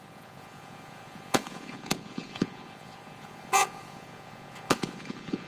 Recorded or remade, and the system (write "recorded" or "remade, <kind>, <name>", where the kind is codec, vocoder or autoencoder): remade, vocoder, Vocos